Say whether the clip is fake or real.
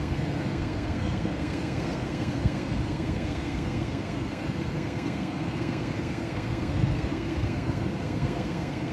fake